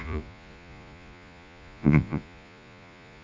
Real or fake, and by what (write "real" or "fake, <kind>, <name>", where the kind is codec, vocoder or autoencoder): fake, vocoder, Vocos